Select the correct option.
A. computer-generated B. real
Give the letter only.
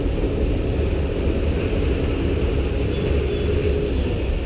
B